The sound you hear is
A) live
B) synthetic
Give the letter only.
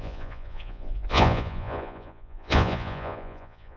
B